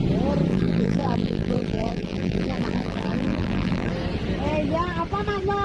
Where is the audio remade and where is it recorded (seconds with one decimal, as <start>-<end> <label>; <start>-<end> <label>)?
0.0-0.5 recorded; 0.5-3.9 remade; 3.9-5.6 recorded